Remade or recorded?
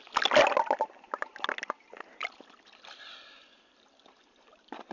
recorded